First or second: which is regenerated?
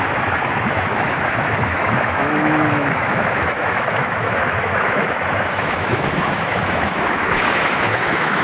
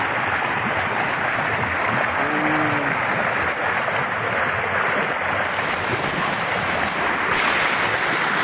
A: first